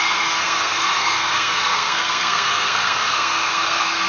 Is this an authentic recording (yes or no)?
no